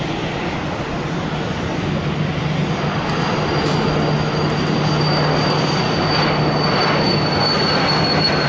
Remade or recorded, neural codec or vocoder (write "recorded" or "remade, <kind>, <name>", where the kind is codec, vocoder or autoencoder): recorded